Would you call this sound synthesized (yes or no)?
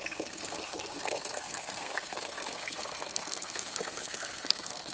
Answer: yes